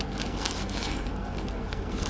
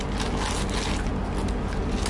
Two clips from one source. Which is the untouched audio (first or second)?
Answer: second